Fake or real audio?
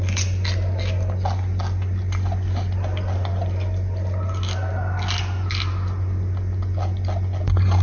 real